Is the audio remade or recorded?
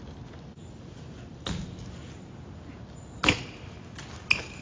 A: recorded